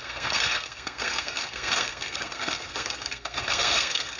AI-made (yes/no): yes